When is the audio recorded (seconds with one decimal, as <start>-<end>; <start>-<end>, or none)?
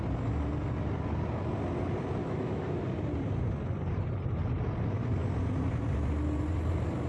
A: 0.0-2.2; 2.8-7.1